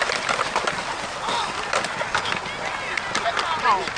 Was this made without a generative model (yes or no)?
yes